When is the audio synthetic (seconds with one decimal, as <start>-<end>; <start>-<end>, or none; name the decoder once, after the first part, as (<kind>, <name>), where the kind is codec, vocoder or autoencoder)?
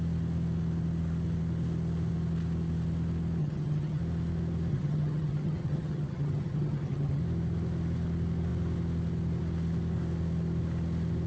3.4-4.0 (vocoder, HiFi-GAN); 4.7-7.2